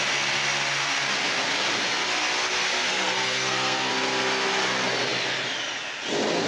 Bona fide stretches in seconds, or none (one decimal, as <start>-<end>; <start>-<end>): 0.0-2.9; 3.9-6.5